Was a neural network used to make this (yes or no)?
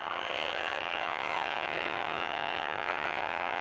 yes